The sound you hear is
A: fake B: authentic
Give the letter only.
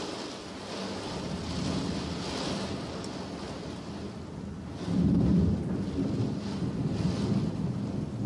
B